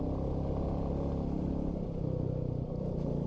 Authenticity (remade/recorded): recorded